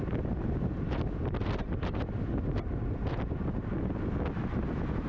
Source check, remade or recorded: recorded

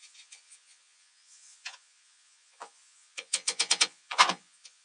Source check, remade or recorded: remade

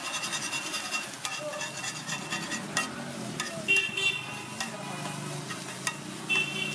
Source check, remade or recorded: recorded